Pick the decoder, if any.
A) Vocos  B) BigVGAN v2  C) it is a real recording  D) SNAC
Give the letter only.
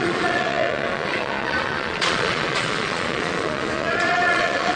A